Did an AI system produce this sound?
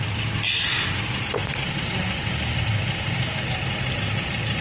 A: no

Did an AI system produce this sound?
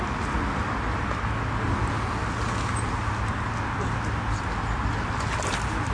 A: no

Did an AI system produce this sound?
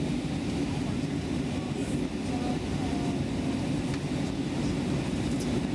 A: no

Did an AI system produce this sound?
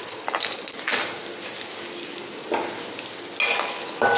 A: no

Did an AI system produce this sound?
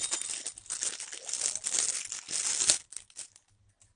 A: no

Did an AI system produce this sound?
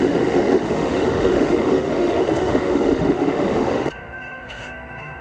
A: yes